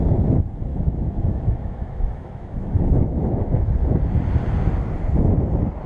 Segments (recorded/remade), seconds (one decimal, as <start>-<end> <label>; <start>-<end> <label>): 0.0-0.7 recorded; 0.7-3.7 remade; 3.7-5.9 recorded